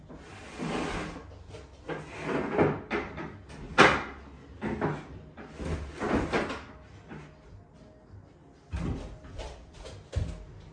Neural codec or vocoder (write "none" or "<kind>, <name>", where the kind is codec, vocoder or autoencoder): none